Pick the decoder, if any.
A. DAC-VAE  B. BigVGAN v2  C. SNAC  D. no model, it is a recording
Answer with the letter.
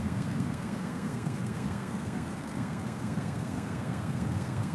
C